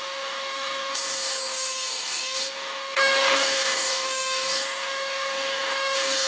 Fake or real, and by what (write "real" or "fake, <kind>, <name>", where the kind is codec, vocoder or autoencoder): fake, codec, DAC